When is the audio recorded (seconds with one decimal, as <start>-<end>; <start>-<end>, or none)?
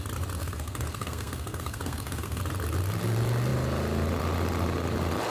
0.0-0.4; 2.4-5.3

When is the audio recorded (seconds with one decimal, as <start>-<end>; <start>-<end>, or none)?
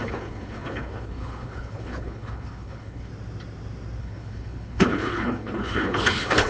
3.1-4.0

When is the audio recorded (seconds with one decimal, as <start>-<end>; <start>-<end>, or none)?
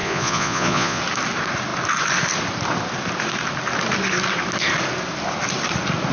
1.0-6.1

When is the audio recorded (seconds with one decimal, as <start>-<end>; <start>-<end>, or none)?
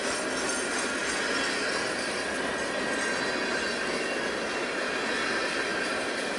0.0-5.7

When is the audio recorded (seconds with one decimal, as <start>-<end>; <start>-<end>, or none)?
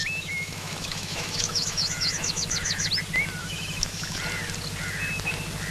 2.9-3.4; 4.2-5.7